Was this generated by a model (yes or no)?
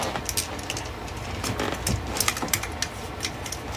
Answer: no